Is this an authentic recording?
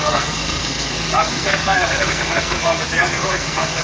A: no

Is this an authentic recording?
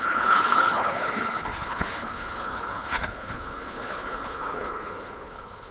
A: no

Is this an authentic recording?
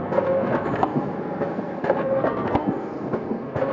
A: no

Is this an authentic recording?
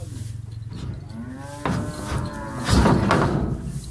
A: yes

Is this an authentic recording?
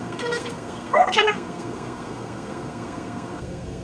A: no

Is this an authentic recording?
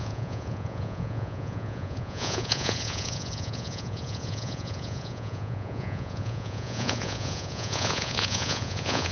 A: no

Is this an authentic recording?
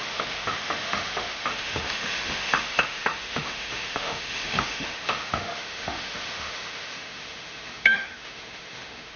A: no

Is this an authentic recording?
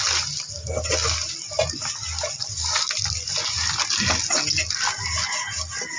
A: yes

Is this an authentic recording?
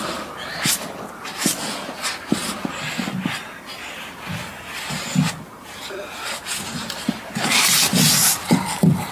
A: yes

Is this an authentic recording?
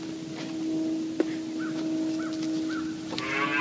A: yes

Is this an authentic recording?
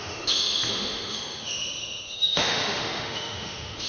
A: no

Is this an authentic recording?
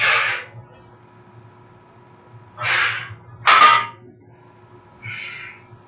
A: yes